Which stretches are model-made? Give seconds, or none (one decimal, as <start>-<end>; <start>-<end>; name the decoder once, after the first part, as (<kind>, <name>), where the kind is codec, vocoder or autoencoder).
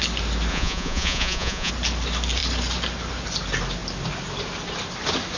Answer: 0.5-1.7 (vocoder, Vocos)